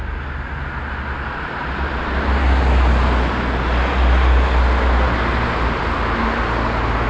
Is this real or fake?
real